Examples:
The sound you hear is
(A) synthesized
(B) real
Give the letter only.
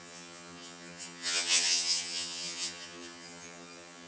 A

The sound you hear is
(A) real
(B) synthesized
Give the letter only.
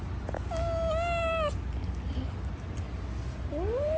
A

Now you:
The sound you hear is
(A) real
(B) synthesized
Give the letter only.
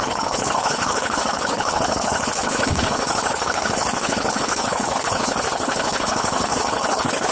B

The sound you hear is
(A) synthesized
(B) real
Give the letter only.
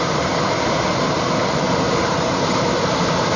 B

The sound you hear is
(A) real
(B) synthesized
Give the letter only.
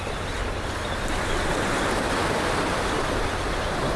A